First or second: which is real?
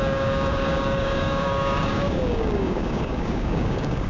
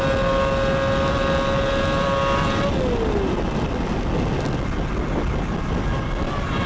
second